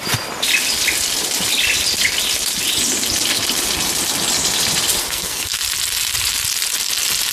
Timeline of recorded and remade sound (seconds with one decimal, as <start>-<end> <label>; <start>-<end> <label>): 0.0-5.0 recorded; 5.0-5.6 remade; 5.6-7.3 recorded